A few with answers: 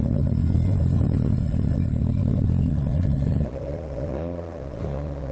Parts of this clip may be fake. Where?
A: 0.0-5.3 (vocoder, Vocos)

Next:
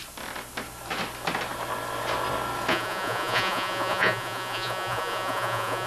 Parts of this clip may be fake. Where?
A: 2.7-5.9 (vocoder, Vocos)

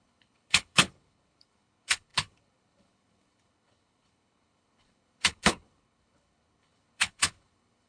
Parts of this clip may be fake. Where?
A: 0.0-7.9 (codec, HILCodec)

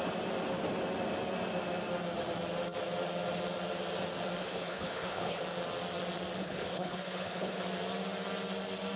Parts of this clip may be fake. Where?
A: 4.4-5.4 (codec, HILCodec); 6.4-7.6

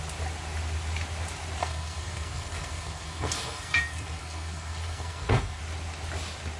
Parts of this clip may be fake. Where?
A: 1.6-5.6 (codec, SNAC)

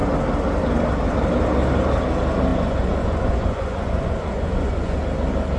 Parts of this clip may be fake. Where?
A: 2.5-5.0 (vocoder, Vocos)

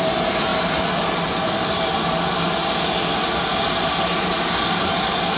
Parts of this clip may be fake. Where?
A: none

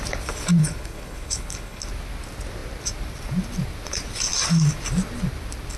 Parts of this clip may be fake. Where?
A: 0.6-1.8 (codec, HILCodec)